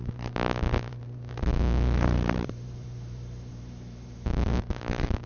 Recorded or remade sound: remade